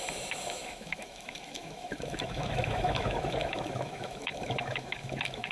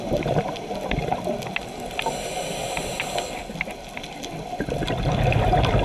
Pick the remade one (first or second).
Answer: first